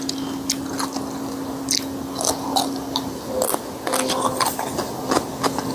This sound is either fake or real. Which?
real